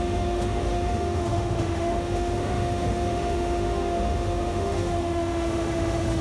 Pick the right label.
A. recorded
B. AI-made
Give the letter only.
B